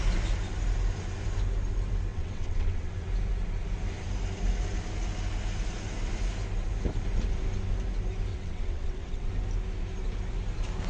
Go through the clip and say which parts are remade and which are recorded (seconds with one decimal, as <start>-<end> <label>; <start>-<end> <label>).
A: 0.0-2.1 recorded; 2.1-2.9 remade; 2.9-8.3 recorded; 8.3-9.3 remade; 9.3-10.9 recorded